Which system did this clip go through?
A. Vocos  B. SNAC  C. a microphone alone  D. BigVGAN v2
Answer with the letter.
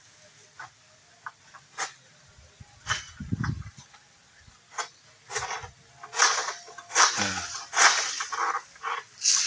C